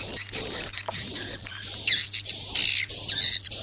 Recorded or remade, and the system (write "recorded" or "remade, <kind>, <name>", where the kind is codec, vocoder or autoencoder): remade, vocoder, BigVGAN v2